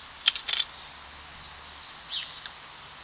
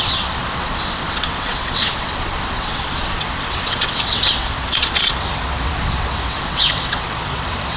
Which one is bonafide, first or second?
first